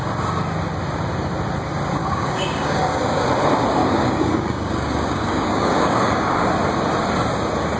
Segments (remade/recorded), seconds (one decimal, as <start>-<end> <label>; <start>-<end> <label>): 0.0-2.0 recorded; 2.0-3.3 remade; 3.3-3.8 recorded; 3.8-6.5 remade; 6.5-7.8 recorded